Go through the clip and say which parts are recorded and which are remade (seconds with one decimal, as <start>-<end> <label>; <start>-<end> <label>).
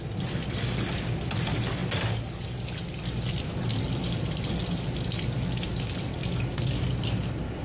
0.0-7.6 recorded